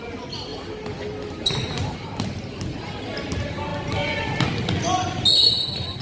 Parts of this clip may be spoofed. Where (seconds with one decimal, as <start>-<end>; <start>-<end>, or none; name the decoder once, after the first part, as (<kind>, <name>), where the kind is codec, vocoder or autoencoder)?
none

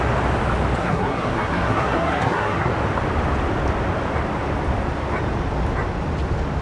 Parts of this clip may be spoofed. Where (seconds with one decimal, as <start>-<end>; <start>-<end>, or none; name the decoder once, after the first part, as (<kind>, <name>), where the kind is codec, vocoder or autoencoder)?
0.8-2.7 (codec, SNAC)